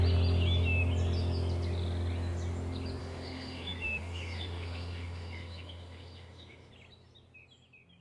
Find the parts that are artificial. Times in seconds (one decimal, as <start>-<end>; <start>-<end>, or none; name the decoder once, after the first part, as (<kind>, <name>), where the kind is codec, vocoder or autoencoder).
3.0-6.7 (autoencoder, DAC-VAE)